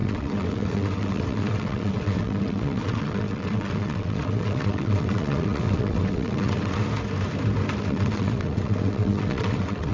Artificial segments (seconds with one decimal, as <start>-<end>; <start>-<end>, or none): 0.0-6.8; 7.8-9.9